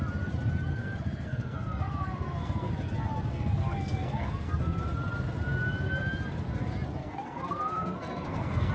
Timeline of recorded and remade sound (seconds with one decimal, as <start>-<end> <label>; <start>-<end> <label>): 0.0-0.7 recorded; 0.7-2.7 remade; 2.7-3.3 recorded; 3.3-4.8 remade; 4.8-7.0 recorded; 7.0-8.7 remade